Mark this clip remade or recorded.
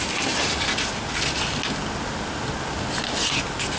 recorded